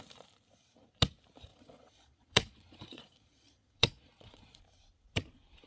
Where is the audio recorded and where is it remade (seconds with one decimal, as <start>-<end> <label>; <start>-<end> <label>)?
0.0-1.5 recorded; 1.5-4.6 remade; 4.6-5.7 recorded